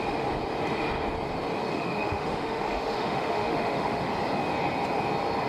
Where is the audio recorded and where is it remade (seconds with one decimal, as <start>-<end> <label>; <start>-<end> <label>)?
0.0-1.7 recorded; 1.7-4.1 remade; 4.1-5.5 recorded